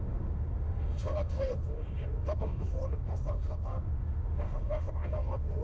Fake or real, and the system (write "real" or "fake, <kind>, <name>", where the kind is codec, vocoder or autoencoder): fake, autoencoder, DAC-VAE